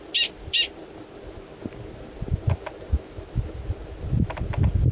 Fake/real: real